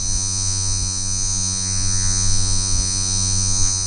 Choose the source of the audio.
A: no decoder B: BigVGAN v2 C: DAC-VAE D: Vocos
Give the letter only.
D